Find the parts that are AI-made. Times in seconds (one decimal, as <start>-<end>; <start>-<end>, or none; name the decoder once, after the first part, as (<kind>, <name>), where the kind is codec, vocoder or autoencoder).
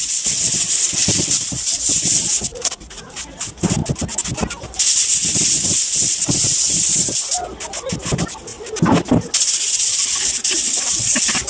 2.5-3.2 (vocoder, Vocos)